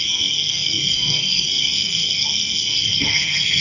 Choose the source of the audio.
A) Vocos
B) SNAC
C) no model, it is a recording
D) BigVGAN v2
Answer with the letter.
B